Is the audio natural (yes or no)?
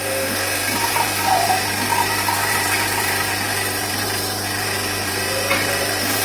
no